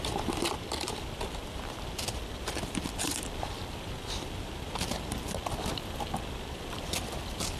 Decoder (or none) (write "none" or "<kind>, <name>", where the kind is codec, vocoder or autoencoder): vocoder, BigVGAN v2